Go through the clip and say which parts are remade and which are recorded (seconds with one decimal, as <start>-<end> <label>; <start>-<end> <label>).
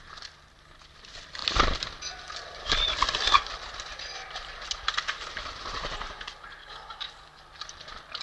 0.0-6.6 recorded; 6.6-7.4 remade; 7.4-8.2 recorded